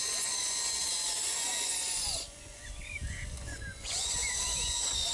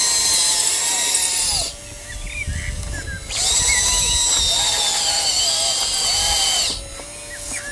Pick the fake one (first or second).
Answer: first